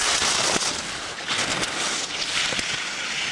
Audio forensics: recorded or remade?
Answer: recorded